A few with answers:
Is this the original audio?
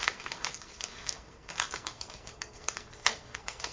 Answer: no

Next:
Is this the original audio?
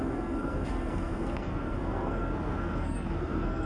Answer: no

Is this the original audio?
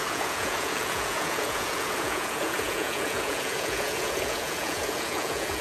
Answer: no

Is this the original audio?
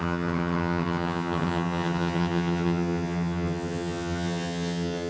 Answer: no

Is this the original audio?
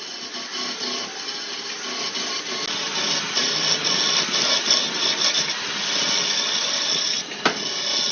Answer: yes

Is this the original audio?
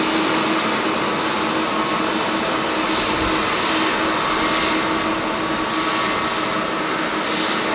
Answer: yes